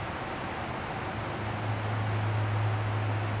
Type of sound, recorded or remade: recorded